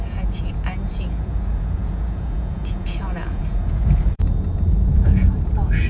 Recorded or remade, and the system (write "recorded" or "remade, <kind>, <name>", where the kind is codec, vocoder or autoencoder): remade, vocoder, Vocos